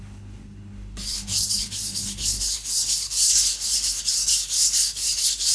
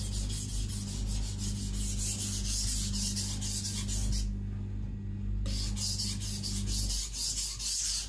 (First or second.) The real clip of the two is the second